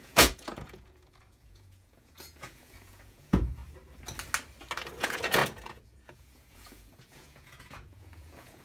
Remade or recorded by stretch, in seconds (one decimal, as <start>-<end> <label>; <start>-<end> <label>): 0.0-3.6 remade; 3.6-5.0 recorded; 5.0-8.6 remade